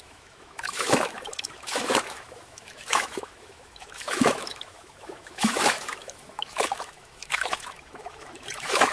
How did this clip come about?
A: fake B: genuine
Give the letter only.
A